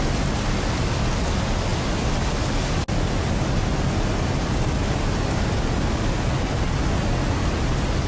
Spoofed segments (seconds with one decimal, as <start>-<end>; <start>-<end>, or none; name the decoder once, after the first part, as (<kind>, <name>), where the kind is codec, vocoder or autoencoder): none